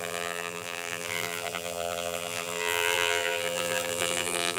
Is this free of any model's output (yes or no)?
no